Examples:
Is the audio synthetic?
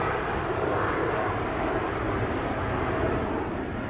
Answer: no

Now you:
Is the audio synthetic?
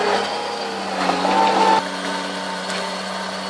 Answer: no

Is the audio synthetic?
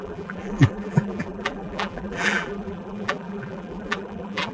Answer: yes